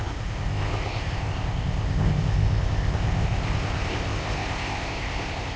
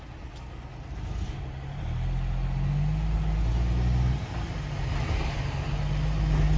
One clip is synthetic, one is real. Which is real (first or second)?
second